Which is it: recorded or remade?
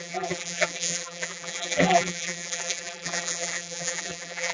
remade